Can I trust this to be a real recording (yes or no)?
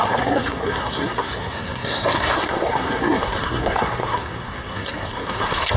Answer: no